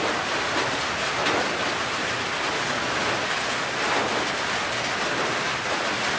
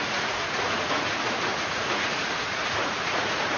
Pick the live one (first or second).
first